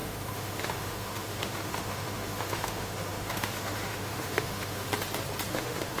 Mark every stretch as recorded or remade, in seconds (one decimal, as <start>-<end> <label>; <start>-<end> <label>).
0.0-4.9 remade; 4.9-5.5 recorded; 5.5-6.0 remade